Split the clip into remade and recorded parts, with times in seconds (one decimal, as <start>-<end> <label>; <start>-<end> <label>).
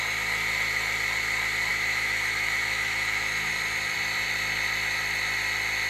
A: 0.0-1.7 recorded; 1.7-3.5 remade; 3.5-5.9 recorded